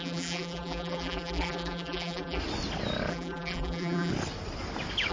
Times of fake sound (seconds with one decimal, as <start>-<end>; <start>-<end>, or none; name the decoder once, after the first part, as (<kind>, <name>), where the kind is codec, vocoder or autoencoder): 0.0-2.4 (vocoder, BigVGAN v2); 3.1-4.1